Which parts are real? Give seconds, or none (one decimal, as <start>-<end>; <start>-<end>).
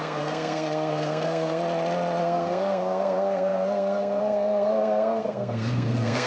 1.6-2.2